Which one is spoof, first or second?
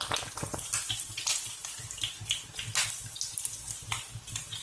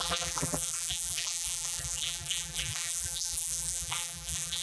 second